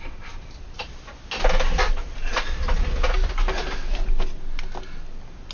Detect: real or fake real